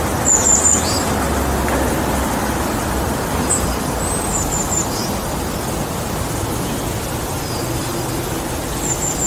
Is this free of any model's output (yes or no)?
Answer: yes